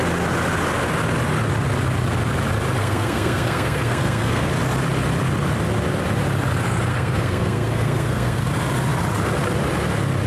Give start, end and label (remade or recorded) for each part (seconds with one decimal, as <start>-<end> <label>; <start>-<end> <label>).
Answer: 0.0-2.8 recorded; 2.8-4.5 remade; 4.5-6.9 recorded; 6.9-8.5 remade; 8.5-10.3 recorded